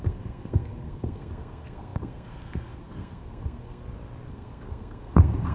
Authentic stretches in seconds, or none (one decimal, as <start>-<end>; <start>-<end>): 3.8-4.3